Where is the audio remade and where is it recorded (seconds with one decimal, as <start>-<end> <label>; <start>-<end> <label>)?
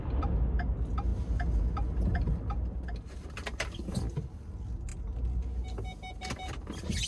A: 0.0-7.1 recorded